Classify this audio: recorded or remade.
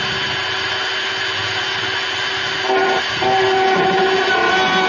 recorded